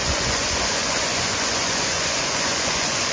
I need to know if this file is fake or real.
fake